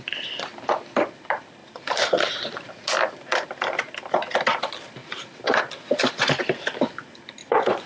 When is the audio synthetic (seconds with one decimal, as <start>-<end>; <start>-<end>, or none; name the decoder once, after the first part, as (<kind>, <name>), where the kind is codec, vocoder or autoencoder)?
1.6-2.7 (vocoder, BigVGAN v2); 5.0-5.6; 7.4-7.9

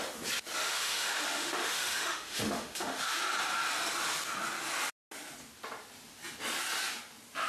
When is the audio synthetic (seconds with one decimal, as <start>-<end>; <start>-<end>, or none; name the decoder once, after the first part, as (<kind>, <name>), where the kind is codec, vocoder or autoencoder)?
0.6-3.2 (autoencoder, DAC-VAE)

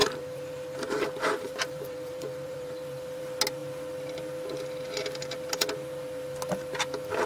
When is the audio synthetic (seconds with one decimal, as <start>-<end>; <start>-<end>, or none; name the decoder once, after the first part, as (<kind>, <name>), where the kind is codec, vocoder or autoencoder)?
0.0-3.2 (vocoder, BigVGAN v2)

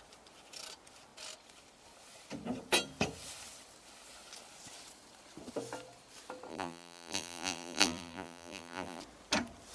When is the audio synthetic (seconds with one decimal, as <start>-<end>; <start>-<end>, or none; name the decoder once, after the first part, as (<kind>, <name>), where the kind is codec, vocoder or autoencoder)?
6.5-9.0 (vocoder, BigVGAN v2)

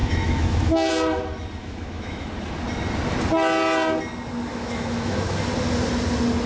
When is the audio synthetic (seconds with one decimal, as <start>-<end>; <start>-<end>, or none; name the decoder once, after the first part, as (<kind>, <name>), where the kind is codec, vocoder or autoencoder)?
0.0-0.9 (autoencoder, DAC-VAE); 1.6-2.3; 4.5-5.2

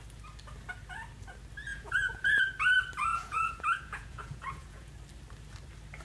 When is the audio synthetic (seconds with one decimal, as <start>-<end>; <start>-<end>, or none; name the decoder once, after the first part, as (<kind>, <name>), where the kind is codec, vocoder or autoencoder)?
1.7-2.4 (vocoder, Vocos); 3.1-4.9